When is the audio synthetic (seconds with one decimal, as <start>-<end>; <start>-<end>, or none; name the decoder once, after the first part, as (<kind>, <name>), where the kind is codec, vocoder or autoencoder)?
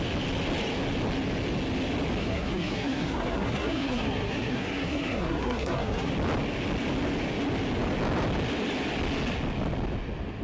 2.2-6.1 (codec, SNAC)